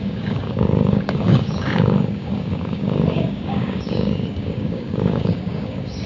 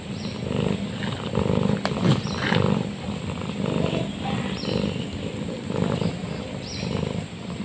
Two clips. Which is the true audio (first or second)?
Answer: second